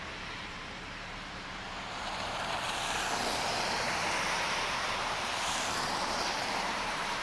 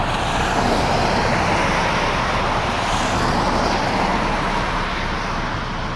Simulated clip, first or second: first